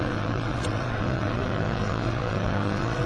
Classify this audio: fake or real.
fake